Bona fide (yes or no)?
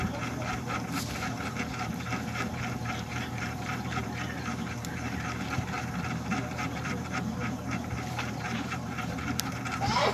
no